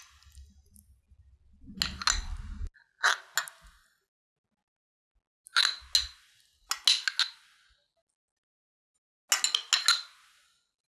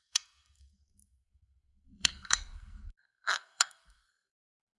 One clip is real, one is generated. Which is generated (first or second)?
second